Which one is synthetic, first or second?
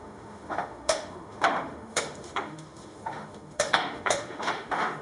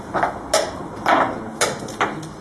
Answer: first